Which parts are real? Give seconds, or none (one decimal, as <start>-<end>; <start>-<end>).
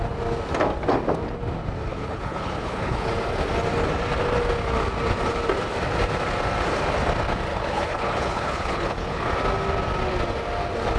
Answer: 0.0-1.9; 3.1-7.5; 9.3-11.0